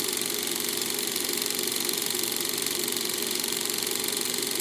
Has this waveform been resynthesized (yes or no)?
yes